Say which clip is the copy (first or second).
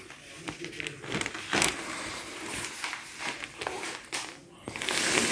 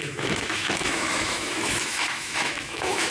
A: second